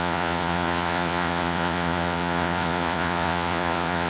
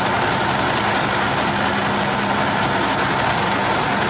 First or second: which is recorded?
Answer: second